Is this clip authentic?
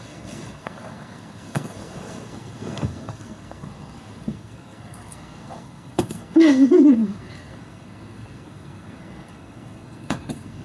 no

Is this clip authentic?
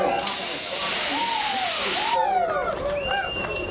yes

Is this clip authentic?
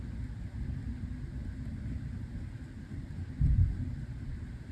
yes